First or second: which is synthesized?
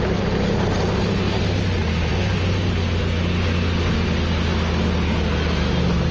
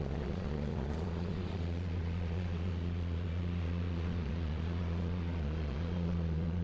second